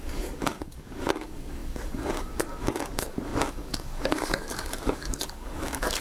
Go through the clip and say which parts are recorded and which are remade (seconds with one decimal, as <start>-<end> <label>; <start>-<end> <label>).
0.0-6.0 remade